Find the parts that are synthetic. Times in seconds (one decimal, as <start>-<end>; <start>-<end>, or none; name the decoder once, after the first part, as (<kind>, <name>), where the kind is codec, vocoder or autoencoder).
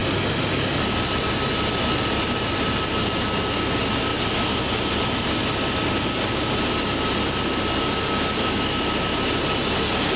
none